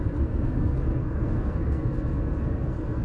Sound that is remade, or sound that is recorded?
remade